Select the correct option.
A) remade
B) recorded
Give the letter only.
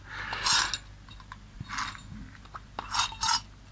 B